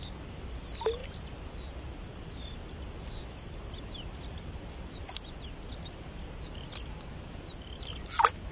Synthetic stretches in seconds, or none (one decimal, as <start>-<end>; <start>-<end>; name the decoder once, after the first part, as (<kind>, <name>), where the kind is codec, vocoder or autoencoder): none